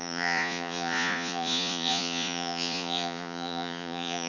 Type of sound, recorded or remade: remade